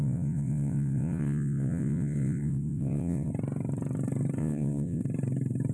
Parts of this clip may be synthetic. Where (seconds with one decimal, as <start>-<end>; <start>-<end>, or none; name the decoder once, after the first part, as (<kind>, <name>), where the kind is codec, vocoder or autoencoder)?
0.0-3.3 (vocoder, WaveNeXt); 4.4-5.0